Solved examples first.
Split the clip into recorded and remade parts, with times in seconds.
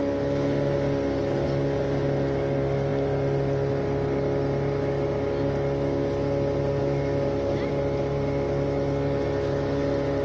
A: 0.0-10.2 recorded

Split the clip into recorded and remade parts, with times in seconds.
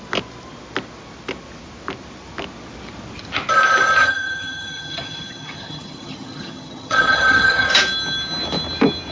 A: 0.0-4.0 recorded; 4.0-7.7 remade; 7.7-9.1 recorded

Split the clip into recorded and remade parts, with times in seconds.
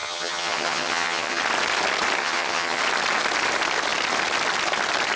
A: 0.0-1.4 remade; 1.4-2.2 recorded; 2.2-2.8 remade; 2.8-5.2 recorded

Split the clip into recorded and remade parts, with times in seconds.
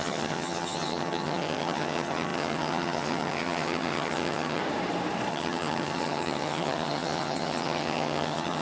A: 0.0-4.6 remade; 4.6-5.3 recorded; 5.3-8.6 remade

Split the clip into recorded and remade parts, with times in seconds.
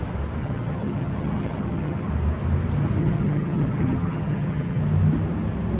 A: 0.0-0.4 recorded; 0.4-2.1 remade; 2.1-3.0 recorded; 3.0-4.8 remade; 4.8-5.8 recorded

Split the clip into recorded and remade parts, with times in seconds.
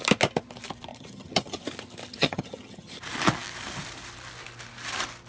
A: 0.0-0.9 recorded; 0.9-1.6 remade; 1.6-2.1 recorded; 2.1-3.0 remade; 3.0-5.3 recorded